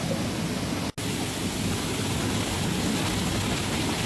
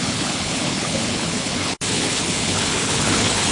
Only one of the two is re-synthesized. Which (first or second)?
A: second